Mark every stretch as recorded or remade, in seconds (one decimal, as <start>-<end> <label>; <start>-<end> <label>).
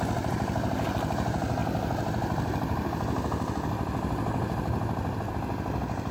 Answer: 0.0-6.1 recorded